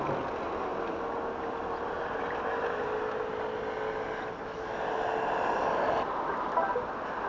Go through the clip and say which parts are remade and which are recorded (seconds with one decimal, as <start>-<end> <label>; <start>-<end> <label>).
0.0-7.3 recorded